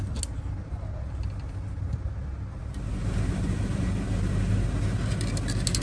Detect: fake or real real